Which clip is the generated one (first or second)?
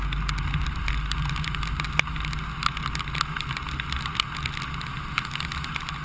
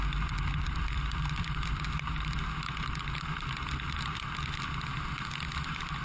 second